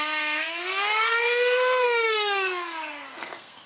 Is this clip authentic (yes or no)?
no